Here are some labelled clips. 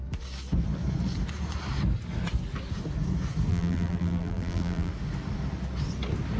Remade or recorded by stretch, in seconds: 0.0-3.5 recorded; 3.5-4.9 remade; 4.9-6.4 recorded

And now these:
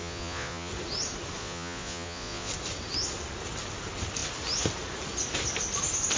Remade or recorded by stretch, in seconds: 0.0-0.7 remade; 0.7-1.4 recorded; 1.4-2.5 remade; 2.5-6.2 recorded

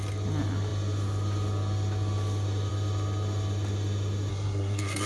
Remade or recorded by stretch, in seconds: 0.0-4.3 recorded; 4.3-5.1 remade

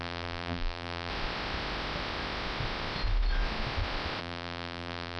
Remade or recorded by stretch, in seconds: 0.0-1.1 remade; 1.1-4.2 recorded; 4.2-5.2 remade

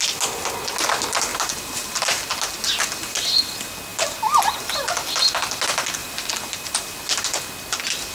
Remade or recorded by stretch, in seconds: 0.0-1.3 recorded; 1.3-2.2 remade; 2.2-3.9 recorded; 3.9-4.9 remade; 4.9-6.0 recorded; 6.0-7.4 remade; 7.4-8.1 recorded

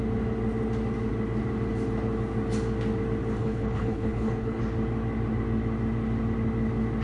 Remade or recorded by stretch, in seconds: 0.0-3.4 recorded; 3.4-4.6 remade; 4.6-7.0 recorded

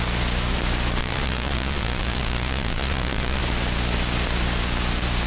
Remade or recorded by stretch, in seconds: 0.0-1.0 recorded; 1.0-3.4 remade; 3.4-5.3 recorded